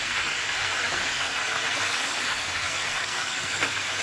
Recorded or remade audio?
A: remade